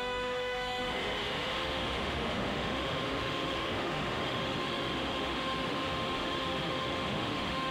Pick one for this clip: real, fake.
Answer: fake